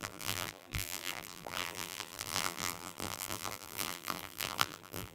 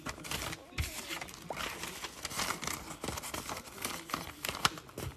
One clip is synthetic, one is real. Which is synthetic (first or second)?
first